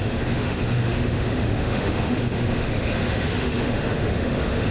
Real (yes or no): no